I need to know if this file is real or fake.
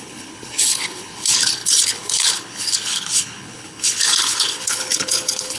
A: fake